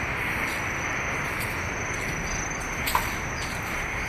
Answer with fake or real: real